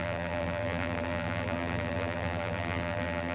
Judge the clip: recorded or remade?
remade